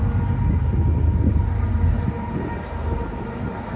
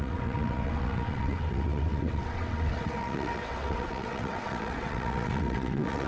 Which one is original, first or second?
first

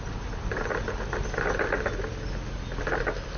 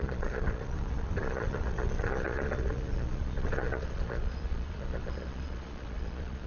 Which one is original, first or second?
first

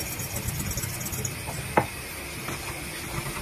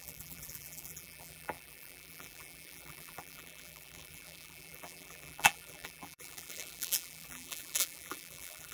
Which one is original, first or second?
first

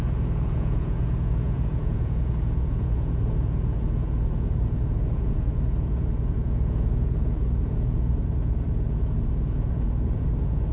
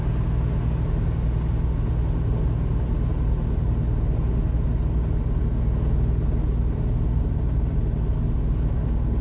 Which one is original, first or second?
second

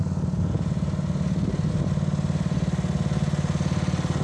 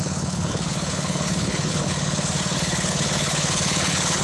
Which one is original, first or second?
first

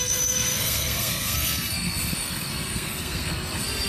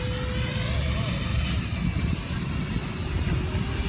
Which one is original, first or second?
second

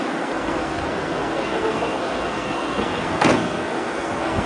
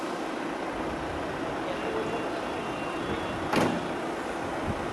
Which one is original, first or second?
second